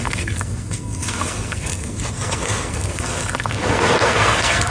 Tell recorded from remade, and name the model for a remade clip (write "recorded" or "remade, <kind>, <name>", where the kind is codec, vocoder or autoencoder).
remade, codec, SNAC